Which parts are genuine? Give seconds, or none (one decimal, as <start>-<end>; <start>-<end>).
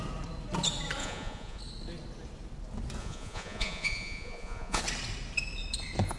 0.0-1.0; 1.6-3.0; 4.8-6.2